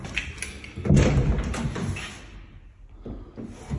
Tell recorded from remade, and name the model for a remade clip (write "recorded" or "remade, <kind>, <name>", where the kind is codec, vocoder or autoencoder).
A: recorded